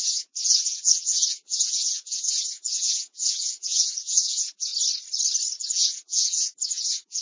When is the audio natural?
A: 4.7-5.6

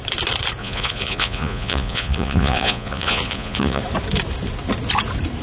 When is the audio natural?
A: 0.0-0.6; 3.8-5.4

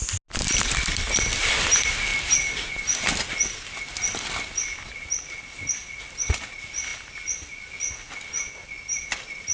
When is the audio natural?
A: 0.0-9.5

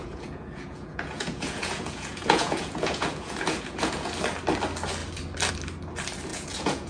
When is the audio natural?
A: 4.1-6.3

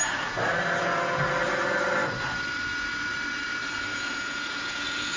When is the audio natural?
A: 0.0-3.9

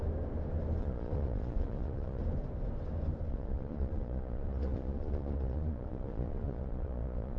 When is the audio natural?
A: 0.0-0.8; 2.2-3.3